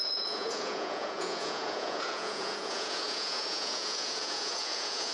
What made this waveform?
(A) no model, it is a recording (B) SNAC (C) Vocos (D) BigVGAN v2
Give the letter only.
C